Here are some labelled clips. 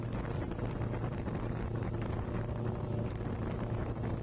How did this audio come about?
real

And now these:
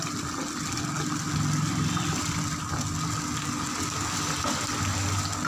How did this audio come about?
real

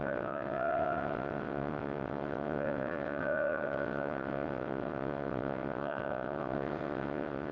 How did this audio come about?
fake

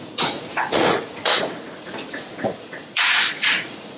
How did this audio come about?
fake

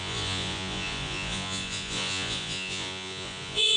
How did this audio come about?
fake